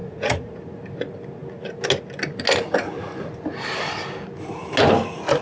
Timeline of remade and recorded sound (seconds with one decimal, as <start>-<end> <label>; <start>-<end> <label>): 0.0-0.6 remade; 0.6-5.4 recorded